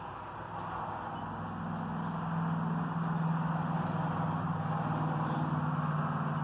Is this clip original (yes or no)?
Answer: yes